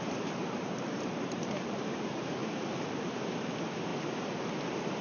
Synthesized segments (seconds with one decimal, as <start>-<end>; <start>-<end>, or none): 0.0-2.4; 2.9-3.9